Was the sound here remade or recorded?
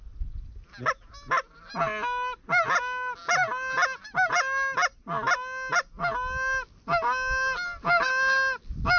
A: recorded